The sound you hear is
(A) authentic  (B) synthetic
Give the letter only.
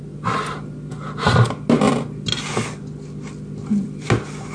A